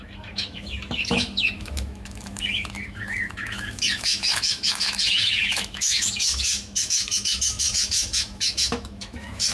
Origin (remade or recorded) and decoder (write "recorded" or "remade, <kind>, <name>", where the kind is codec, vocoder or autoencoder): remade, autoencoder, DAC-VAE